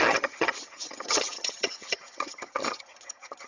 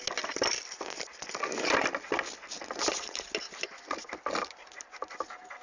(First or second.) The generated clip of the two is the first